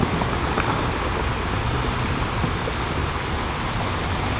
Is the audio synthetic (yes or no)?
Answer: no